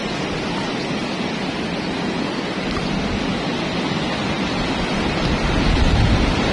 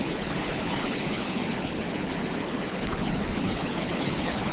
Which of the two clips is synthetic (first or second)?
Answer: second